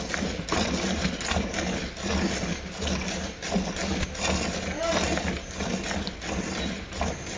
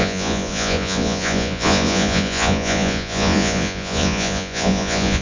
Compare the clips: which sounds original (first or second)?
first